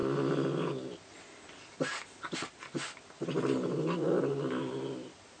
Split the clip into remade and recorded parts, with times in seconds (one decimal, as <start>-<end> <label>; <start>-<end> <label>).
0.0-5.4 recorded